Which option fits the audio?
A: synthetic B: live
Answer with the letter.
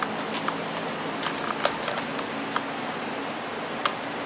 B